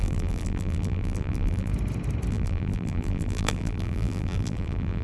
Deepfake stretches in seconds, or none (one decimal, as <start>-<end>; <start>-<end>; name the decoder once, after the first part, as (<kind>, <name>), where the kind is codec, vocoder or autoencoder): 0.0-1.7 (vocoder, BigVGAN v2); 2.3-5.0